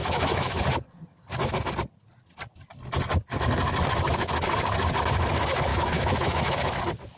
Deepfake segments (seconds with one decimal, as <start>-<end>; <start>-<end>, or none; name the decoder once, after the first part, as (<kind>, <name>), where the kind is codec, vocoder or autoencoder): 0.0-0.6 (autoencoder, DAC-VAE); 5.7-6.8